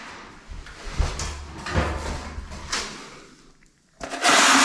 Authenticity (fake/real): real